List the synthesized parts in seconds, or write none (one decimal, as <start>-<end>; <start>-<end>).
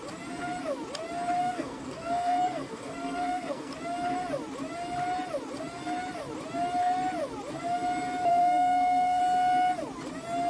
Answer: 1.4-3.7; 8.3-9.2